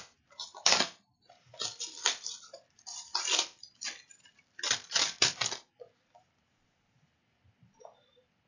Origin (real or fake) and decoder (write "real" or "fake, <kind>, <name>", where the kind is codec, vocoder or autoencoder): fake, vocoder, BigVGAN v2